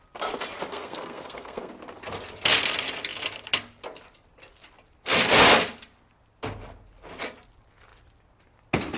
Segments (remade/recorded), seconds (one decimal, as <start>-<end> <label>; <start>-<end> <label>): 0.0-0.7 recorded; 0.7-1.7 remade; 1.7-9.0 recorded